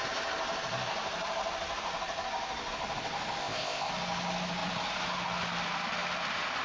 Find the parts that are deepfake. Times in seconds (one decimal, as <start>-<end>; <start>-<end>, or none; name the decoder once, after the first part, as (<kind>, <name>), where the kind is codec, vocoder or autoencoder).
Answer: 3.4-3.9 (codec, ZipCodec)